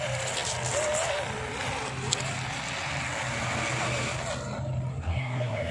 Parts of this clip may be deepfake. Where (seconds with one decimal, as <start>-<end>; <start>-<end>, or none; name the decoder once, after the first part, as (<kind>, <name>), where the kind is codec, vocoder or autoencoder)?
4.9-5.7 (codec, SNAC)